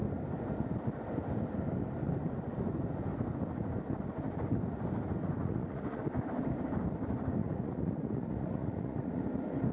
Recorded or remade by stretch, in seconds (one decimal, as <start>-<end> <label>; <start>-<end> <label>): 0.0-5.4 recorded; 5.4-6.0 remade; 6.0-7.4 recorded; 7.4-9.2 remade; 9.2-9.7 recorded